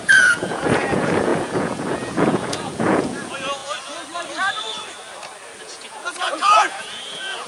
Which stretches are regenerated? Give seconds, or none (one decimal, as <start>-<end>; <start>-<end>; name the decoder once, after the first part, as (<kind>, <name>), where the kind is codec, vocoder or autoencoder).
0.0-3.6 (vocoder, Vocos); 5.6-7.5